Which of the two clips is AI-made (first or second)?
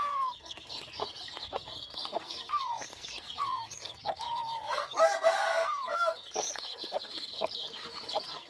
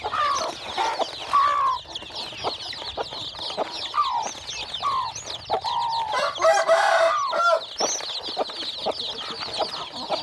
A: first